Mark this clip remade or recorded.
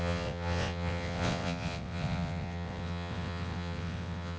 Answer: remade